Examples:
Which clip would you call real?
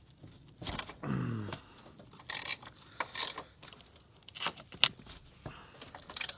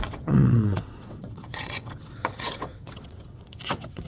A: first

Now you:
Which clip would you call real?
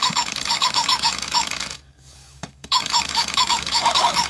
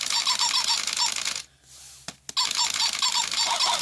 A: second